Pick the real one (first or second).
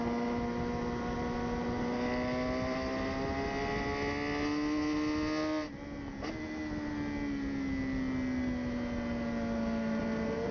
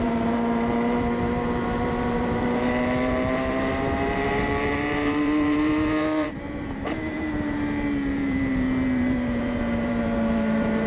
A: first